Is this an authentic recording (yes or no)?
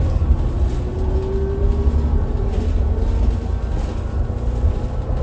yes